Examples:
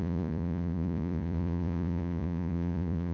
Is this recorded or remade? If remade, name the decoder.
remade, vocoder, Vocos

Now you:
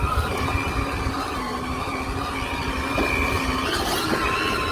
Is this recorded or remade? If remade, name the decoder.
recorded